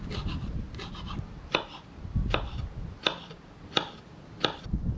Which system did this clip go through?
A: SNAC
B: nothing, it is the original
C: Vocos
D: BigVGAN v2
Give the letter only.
B